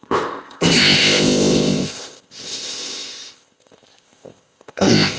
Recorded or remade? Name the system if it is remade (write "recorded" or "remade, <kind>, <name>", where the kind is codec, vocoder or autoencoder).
remade, codec, ZipCodec